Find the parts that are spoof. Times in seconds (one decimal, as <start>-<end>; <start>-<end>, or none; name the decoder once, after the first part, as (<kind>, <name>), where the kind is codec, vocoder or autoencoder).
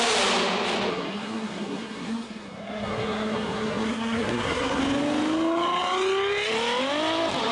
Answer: 0.9-4.8 (codec, SNAC)